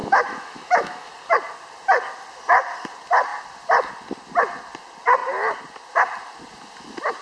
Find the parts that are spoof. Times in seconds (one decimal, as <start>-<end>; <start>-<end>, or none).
0.0-1.1